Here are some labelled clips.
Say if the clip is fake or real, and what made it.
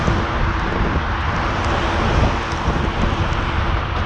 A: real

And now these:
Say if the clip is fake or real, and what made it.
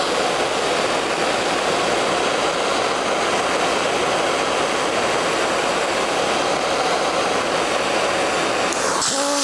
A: real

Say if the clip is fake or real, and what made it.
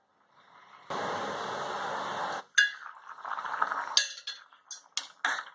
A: real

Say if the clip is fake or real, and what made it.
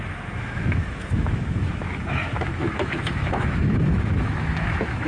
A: fake, autoencoder, DAC-VAE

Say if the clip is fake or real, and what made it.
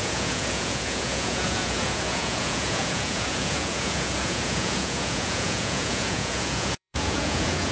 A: fake, vocoder, Vocos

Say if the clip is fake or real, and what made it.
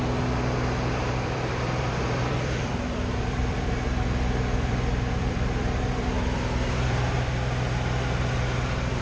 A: fake, vocoder, BigVGAN v2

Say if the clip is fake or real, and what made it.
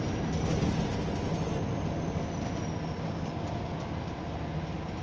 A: real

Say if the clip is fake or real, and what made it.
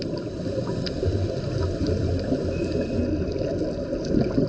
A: real